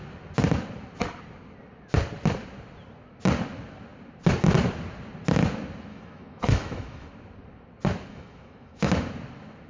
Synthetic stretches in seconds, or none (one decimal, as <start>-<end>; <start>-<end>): 5.9-7.1; 8.1-8.9